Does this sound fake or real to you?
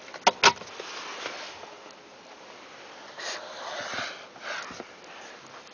real